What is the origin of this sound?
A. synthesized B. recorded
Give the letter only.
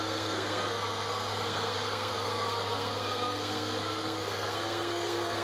A